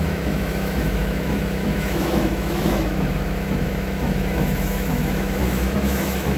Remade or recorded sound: remade